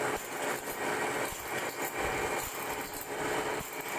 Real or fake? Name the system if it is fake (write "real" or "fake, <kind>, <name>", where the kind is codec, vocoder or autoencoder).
real